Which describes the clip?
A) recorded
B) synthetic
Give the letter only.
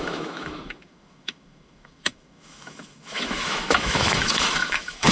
B